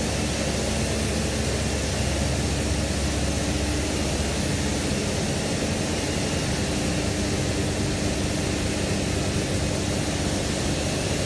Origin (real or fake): real